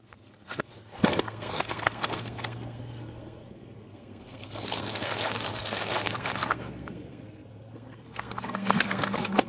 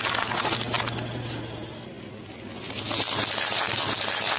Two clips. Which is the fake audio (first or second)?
first